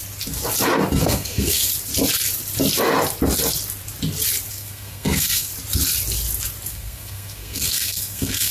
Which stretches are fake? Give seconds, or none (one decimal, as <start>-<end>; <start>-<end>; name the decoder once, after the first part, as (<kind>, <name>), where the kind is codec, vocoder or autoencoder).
1.0-1.7 (codec, SNAC); 4.5-5.5; 6.7-8.5